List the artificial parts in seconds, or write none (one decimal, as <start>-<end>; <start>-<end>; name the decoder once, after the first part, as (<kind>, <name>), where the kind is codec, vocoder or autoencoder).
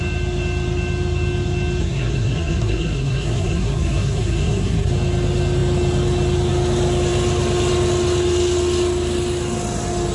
1.8-4.9 (codec, SNAC)